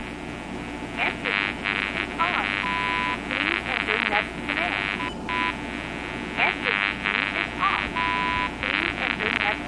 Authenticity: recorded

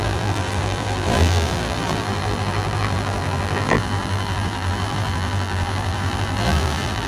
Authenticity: remade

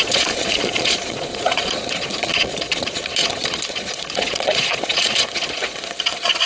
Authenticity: remade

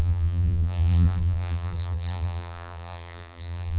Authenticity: remade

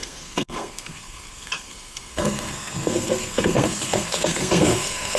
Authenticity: remade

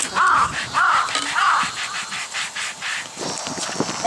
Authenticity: recorded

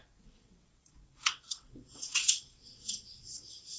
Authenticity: remade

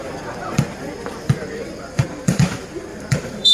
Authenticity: remade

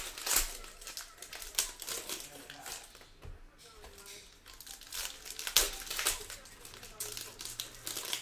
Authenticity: recorded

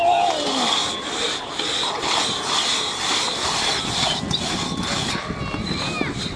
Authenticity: recorded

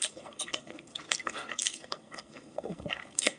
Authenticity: remade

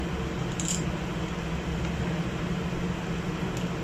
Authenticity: recorded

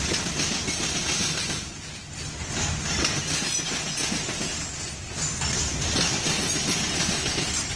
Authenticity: recorded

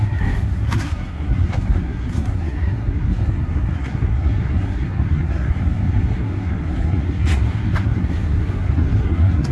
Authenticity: remade